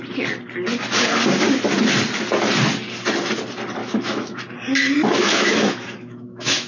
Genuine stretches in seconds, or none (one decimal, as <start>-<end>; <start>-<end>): 0.0-3.8; 4.4-5.2